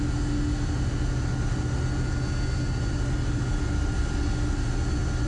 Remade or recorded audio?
recorded